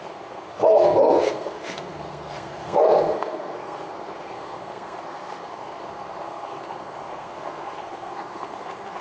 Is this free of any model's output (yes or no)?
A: no